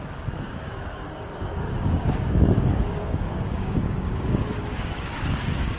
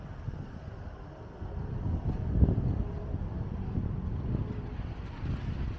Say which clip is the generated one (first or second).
first